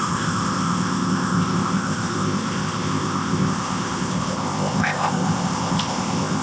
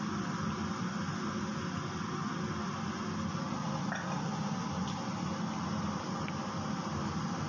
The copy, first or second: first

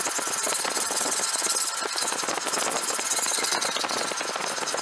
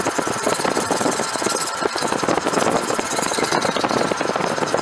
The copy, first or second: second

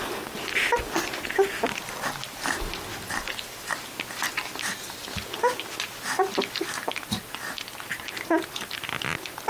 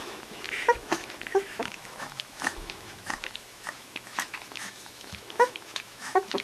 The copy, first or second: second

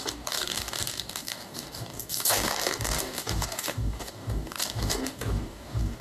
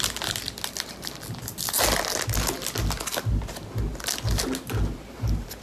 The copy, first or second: first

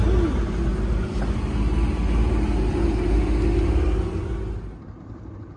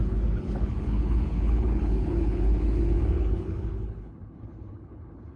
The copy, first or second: second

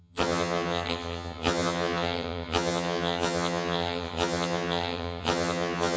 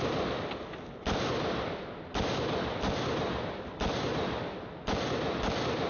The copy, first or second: first